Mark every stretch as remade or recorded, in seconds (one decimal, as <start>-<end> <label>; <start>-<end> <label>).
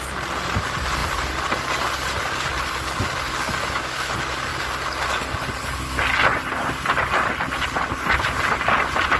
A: 0.0-3.6 recorded; 3.6-4.1 remade; 4.1-9.2 recorded